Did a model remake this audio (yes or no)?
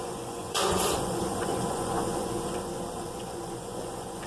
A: yes